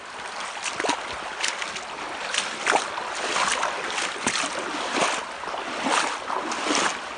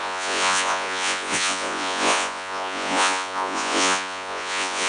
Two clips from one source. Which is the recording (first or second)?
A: first